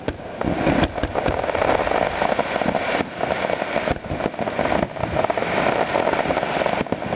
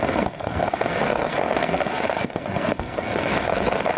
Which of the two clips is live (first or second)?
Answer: first